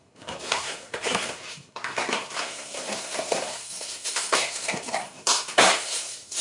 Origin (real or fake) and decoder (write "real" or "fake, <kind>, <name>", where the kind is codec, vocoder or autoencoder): fake, codec, SNAC